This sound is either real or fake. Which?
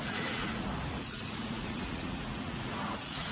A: fake